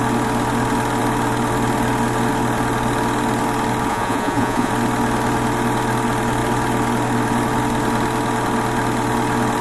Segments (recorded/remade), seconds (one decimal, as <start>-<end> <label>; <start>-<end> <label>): 0.0-3.9 recorded; 3.9-4.7 remade; 4.7-9.6 recorded